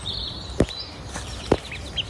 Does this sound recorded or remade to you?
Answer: recorded